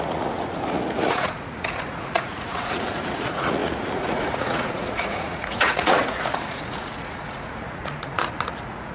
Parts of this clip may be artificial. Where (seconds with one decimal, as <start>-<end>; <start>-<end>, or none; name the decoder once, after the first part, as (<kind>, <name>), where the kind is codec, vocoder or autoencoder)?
0.0-8.9 (vocoder, Vocos)